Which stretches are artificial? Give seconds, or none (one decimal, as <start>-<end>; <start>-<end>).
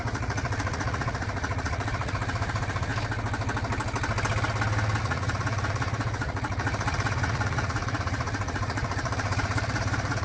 0.0-2.9; 5.0-10.2